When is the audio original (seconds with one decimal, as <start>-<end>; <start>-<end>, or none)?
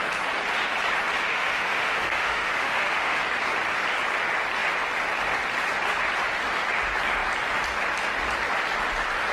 0.0-1.3; 3.2-9.3